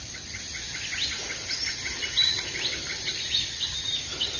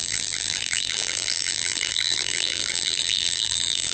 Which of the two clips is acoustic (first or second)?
first